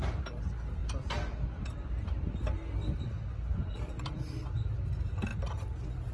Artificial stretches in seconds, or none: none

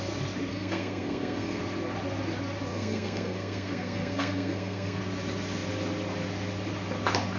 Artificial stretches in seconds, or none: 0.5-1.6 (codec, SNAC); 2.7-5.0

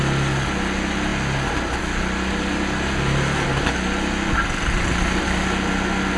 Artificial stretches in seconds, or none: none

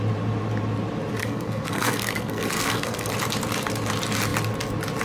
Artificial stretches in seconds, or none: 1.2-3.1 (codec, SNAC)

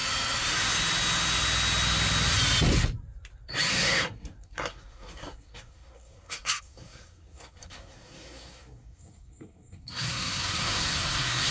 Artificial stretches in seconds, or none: 3.7-11.5 (codec, SNAC)

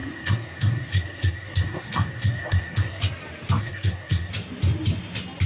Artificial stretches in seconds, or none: 0.0-3.0 (codec, SNAC); 3.6-4.3

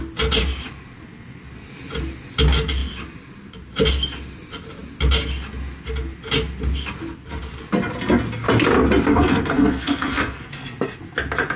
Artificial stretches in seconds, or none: 9.1-10.5 (codec, SNAC)

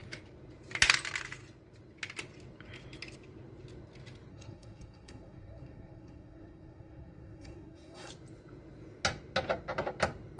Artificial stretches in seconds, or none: 4.3-8.1 (codec, SNAC)